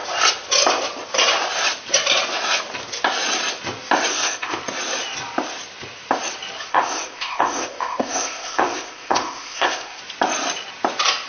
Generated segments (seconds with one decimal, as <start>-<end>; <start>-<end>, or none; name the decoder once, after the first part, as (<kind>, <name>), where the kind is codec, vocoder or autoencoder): 4.1-4.6 (codec, ZipCodec); 6.7-10.0